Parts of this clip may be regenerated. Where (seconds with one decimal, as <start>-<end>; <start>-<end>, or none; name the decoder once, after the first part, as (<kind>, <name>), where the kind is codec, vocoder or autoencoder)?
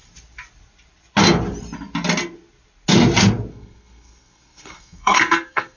3.5-5.8 (codec, SNAC)